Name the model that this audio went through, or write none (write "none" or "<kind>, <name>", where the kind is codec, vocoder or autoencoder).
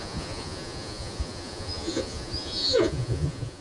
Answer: vocoder, Vocos